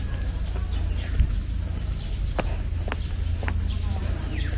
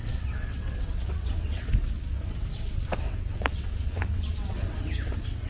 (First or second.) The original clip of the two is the first